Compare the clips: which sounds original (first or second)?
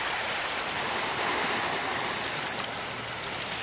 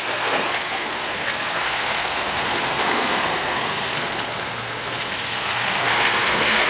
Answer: first